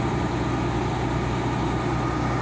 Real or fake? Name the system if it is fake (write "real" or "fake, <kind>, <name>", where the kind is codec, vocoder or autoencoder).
real